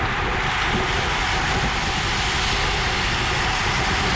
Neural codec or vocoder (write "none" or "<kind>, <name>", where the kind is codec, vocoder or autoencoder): none